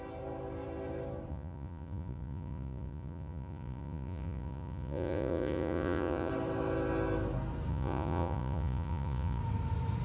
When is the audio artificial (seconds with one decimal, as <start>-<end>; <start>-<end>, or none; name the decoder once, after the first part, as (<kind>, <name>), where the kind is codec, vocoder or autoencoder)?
1.3-6.3 (vocoder, Vocos); 7.7-9.4